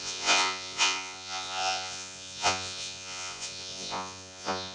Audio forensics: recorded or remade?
remade